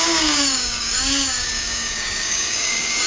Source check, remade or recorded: remade